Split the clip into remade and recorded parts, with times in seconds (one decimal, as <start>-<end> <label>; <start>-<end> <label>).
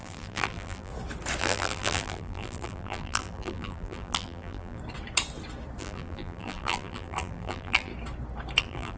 0.0-0.9 remade; 0.9-1.4 recorded; 1.4-4.8 remade; 4.8-5.8 recorded; 5.8-7.9 remade; 7.9-8.6 recorded; 8.6-9.0 remade